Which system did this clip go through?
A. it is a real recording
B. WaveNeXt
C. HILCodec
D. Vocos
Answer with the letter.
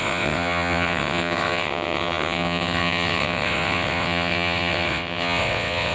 B